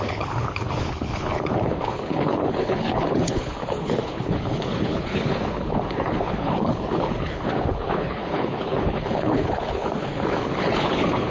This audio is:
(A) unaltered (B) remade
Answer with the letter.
B